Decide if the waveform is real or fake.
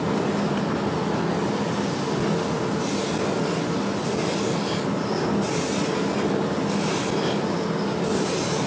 real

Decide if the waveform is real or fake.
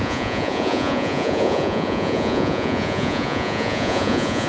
fake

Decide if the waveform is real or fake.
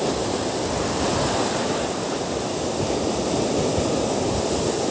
real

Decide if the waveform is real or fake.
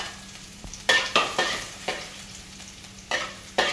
fake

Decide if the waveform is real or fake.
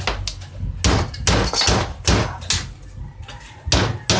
real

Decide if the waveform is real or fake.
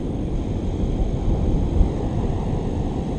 real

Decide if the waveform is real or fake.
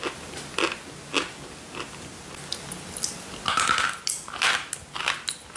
real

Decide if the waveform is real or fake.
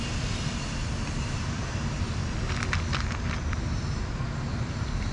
real